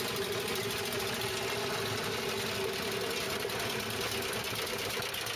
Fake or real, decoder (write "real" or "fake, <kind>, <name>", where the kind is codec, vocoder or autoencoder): real